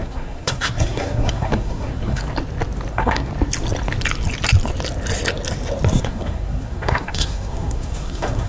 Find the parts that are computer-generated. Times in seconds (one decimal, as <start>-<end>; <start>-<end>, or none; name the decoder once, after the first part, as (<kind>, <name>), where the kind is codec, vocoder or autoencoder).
0.0-2.2 (codec, SNAC); 2.9-3.3; 6.0-8.5